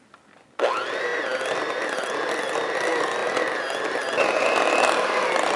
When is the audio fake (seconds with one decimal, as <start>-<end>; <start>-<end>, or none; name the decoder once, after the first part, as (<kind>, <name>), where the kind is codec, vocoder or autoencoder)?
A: none